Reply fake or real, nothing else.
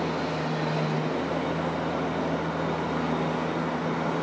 real